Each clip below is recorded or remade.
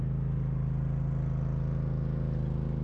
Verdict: recorded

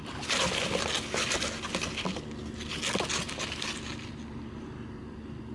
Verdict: recorded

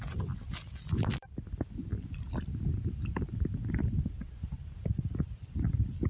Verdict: remade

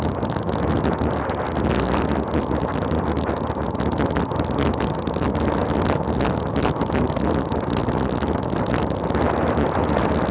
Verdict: recorded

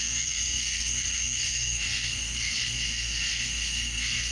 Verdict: remade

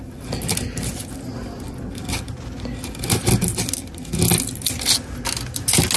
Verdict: recorded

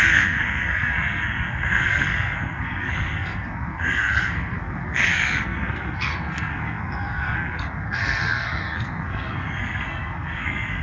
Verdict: remade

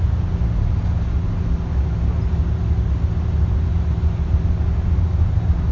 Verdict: recorded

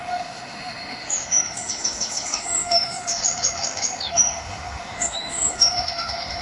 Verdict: remade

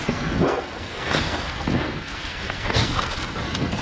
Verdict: remade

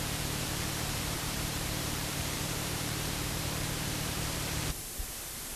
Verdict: remade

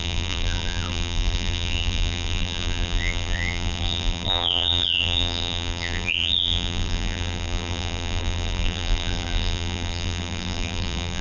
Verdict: remade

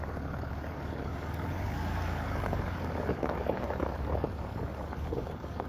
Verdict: remade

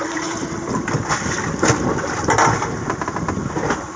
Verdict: recorded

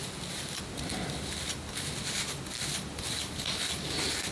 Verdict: recorded